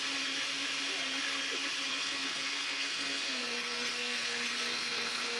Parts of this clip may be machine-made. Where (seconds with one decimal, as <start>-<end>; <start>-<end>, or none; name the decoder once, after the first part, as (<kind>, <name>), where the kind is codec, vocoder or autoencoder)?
1.9-5.4 (codec, SNAC)